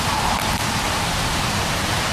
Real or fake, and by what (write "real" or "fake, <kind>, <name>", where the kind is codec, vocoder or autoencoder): real